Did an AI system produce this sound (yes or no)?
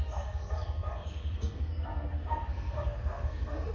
yes